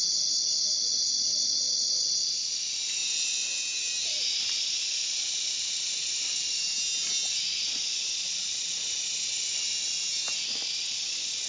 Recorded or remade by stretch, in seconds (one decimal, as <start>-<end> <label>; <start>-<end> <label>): 0.0-3.0 recorded; 3.0-4.6 remade; 4.6-11.5 recorded

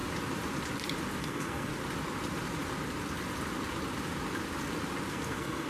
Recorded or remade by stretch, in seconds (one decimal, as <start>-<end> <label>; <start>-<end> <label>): 0.0-1.2 recorded; 1.2-1.7 remade; 1.7-5.1 recorded; 5.1-5.7 remade

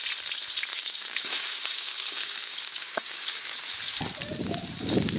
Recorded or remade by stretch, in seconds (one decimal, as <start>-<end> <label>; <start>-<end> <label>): 0.0-0.7 recorded; 0.7-3.8 remade; 3.8-5.2 recorded

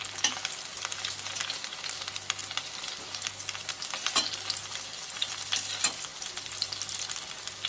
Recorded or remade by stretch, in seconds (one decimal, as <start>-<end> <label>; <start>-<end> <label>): 0.0-7.7 recorded